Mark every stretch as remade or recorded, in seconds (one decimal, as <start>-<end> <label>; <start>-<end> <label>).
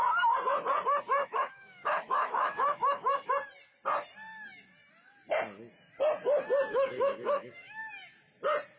0.0-1.2 recorded; 1.2-3.3 remade; 3.3-6.7 recorded; 6.7-7.8 remade; 7.8-8.8 recorded